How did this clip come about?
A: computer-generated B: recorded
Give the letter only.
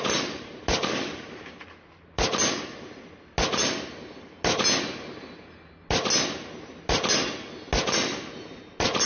B